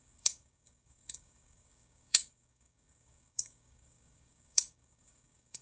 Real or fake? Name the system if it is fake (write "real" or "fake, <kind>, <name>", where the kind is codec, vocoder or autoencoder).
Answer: fake, codec, DAC